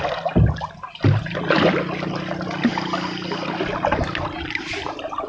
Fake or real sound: real